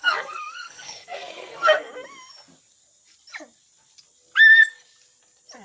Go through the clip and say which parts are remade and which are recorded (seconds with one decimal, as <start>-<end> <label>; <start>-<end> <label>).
0.0-1.9 remade; 1.9-5.6 recorded